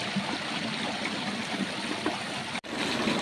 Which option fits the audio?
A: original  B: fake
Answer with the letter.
A